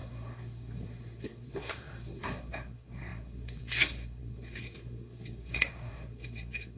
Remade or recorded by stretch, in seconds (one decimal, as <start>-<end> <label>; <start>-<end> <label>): 0.0-6.8 remade